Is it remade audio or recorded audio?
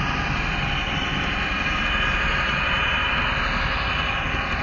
recorded